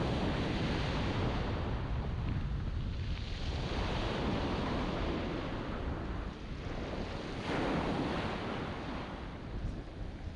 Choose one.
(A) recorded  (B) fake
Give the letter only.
A